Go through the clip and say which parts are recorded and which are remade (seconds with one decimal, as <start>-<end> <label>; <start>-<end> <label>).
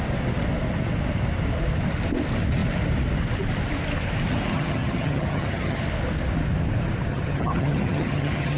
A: 0.0-4.5 recorded; 4.5-5.8 remade; 5.8-7.1 recorded; 7.1-8.6 remade